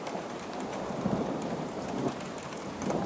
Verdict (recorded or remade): remade